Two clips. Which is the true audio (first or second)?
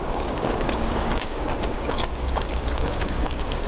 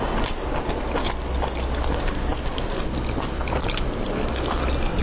second